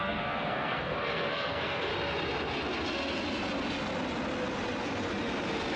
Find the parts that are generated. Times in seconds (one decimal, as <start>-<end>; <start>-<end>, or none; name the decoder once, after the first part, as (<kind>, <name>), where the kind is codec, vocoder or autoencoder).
0.0-1.9 (codec, SNAC)